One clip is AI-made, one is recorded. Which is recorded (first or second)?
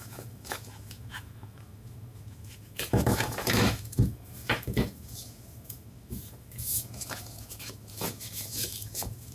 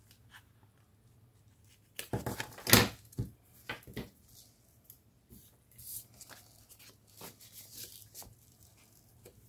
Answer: second